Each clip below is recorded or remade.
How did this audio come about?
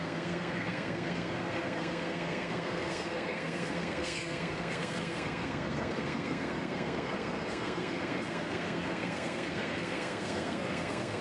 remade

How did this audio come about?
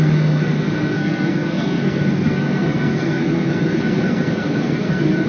remade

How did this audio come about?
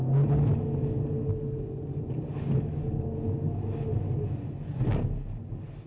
recorded